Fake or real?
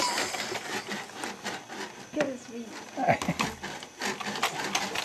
real